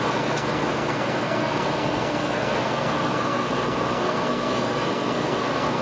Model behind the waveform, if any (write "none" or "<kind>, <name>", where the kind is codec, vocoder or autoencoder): codec, SNAC